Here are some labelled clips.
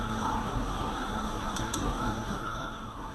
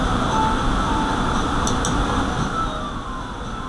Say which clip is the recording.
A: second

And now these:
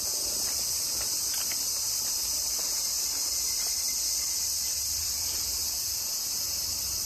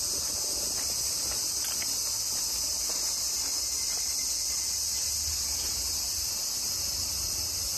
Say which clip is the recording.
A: second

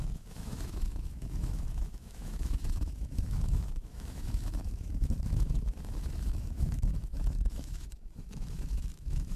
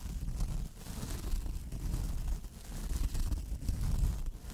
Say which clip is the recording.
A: second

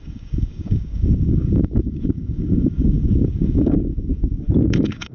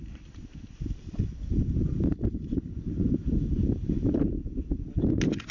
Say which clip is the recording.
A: second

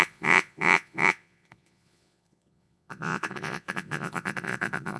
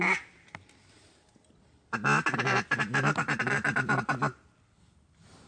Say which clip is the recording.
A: second